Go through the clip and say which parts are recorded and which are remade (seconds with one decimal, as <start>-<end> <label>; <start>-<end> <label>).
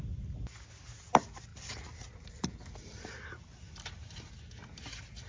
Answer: 0.0-1.5 recorded; 1.5-4.3 remade; 4.3-5.3 recorded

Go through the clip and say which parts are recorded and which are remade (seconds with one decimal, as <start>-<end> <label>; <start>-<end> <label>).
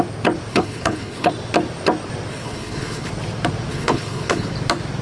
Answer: 0.0-0.5 recorded; 0.5-1.3 remade; 1.3-2.3 recorded; 2.3-3.1 remade; 3.1-3.7 recorded; 3.7-4.5 remade; 4.5-5.0 recorded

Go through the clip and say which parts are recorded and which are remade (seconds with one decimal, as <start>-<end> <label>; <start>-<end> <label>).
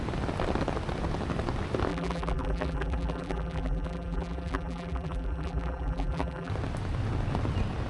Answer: 0.0-1.9 recorded; 1.9-6.5 remade; 6.5-7.9 recorded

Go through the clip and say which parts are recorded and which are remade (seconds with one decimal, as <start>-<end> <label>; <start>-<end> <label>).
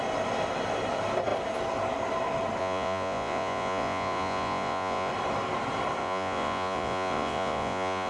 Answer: 0.0-2.6 recorded; 2.6-5.1 remade; 5.1-6.0 recorded; 6.0-8.1 remade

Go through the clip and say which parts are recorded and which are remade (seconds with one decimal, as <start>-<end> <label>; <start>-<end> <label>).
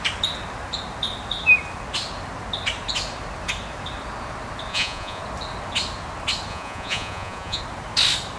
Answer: 0.0-4.7 recorded; 4.7-5.2 remade; 5.2-6.5 recorded; 6.5-7.6 remade; 7.6-8.4 recorded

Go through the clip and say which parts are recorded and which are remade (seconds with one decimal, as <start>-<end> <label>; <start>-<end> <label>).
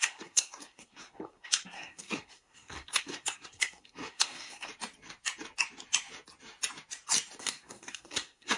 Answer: 0.0-4.7 remade; 4.7-7.4 recorded; 7.4-8.6 remade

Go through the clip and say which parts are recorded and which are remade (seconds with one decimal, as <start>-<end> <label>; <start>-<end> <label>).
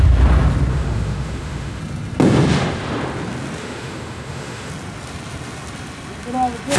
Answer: 0.0-0.7 recorded; 0.7-1.8 remade; 1.8-3.6 recorded; 3.6-4.7 remade; 4.7-6.8 recorded